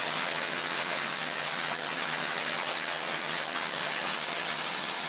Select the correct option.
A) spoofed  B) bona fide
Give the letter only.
A